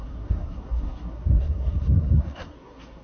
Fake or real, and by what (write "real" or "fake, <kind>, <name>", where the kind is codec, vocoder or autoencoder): fake, codec, SNAC